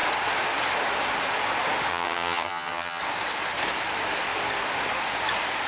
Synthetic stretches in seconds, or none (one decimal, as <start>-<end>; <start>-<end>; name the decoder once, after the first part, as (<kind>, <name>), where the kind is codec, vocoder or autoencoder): 1.9-3.0 (vocoder, HiFi-GAN)